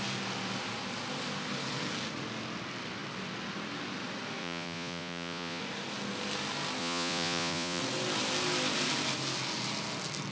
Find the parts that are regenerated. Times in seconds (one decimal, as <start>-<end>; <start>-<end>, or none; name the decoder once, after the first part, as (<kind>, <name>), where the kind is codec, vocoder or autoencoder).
4.4-5.6 (vocoder, Vocos); 6.8-7.8